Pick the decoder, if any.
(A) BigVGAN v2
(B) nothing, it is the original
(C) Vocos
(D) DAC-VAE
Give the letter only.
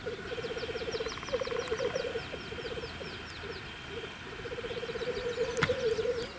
B